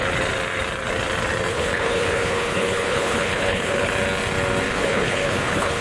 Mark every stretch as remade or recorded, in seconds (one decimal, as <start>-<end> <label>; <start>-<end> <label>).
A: 0.0-1.5 recorded; 1.5-3.9 remade; 3.9-4.7 recorded; 4.7-5.8 remade